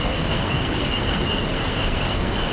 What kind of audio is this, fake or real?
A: fake